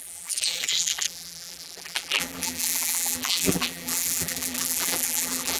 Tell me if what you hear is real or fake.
fake